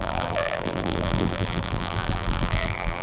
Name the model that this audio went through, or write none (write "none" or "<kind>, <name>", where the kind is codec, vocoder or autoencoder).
vocoder, BigVGAN v2